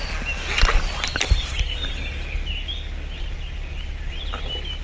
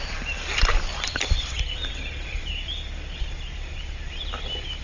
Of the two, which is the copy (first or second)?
second